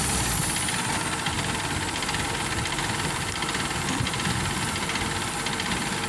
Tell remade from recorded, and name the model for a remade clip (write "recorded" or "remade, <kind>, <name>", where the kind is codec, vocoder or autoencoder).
remade, vocoder, BigVGAN v2